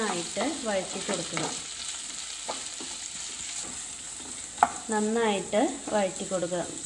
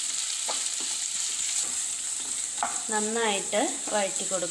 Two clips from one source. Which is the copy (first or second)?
second